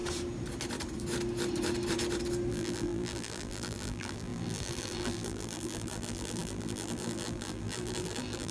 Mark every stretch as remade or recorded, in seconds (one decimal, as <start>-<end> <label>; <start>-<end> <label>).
0.0-2.5 recorded; 2.5-8.5 remade